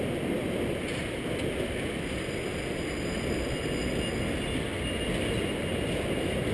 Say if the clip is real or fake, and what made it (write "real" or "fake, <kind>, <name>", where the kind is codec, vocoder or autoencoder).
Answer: real